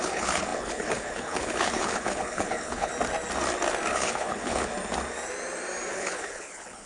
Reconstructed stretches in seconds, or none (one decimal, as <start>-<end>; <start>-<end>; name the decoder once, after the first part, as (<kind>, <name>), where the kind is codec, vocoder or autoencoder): 0.0-2.9 (codec, HILCodec); 3.9-4.7; 5.9-6.9